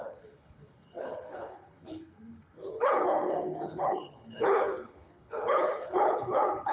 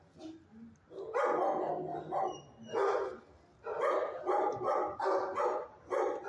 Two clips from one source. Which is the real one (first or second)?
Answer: second